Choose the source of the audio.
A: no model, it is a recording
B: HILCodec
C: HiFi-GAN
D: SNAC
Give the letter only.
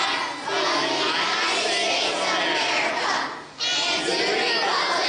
A